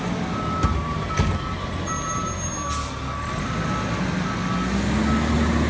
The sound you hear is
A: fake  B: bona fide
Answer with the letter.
B